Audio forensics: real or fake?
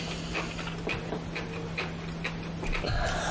real